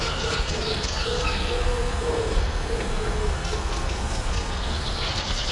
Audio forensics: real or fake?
fake